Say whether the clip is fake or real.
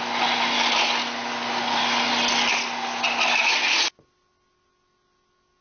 real